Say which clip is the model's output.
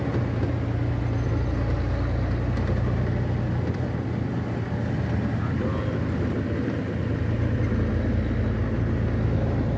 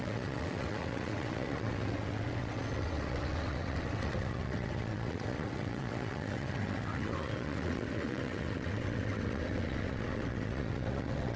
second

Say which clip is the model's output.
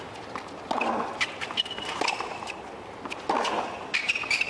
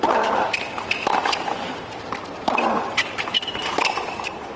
second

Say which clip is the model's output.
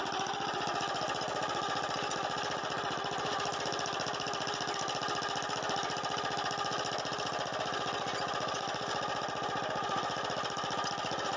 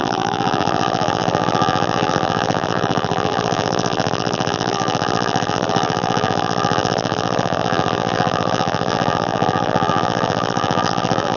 second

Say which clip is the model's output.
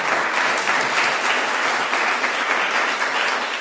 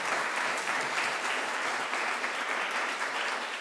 second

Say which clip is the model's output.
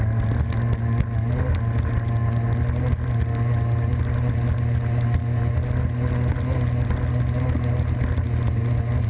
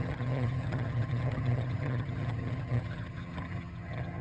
second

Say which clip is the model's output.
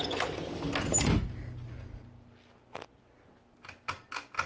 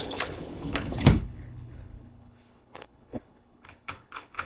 second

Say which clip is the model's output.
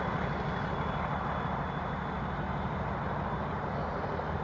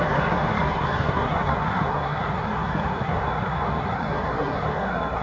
second